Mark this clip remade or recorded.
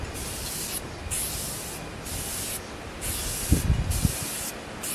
recorded